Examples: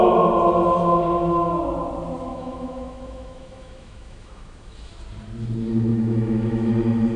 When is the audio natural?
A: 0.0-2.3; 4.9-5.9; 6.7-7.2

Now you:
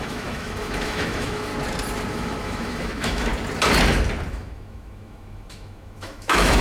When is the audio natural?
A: 1.5-2.1; 3.3-4.3